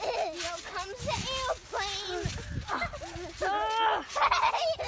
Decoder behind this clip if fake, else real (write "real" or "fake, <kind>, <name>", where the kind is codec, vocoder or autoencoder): real